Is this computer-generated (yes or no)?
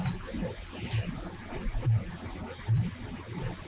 no